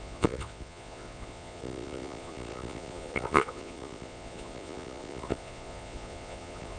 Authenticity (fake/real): fake